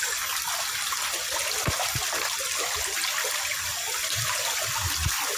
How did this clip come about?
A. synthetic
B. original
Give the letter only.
B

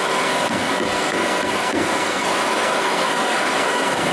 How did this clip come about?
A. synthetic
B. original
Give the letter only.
A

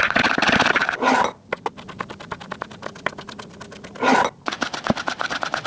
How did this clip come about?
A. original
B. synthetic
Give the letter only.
A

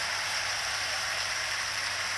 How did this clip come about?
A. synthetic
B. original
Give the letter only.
A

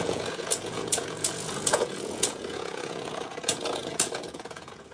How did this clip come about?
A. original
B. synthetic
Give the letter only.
B